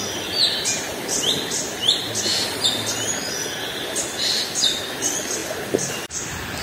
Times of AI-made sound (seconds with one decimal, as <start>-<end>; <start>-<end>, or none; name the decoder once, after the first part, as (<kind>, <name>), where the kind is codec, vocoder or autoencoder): none